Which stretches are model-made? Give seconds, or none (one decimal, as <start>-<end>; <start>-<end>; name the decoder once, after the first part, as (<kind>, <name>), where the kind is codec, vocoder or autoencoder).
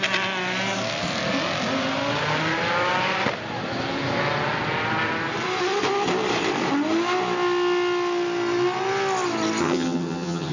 9.6-10.5 (vocoder, HiFi-GAN)